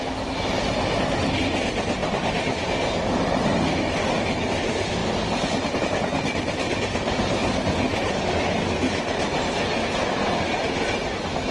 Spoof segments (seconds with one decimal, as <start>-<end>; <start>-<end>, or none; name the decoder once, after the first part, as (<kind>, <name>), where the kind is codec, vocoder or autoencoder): none